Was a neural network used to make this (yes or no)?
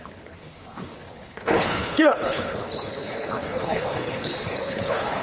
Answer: yes